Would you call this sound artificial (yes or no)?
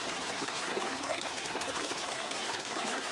yes